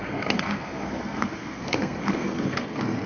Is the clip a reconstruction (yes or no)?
yes